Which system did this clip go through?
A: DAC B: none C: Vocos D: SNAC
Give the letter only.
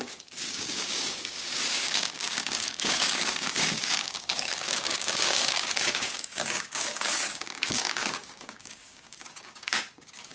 A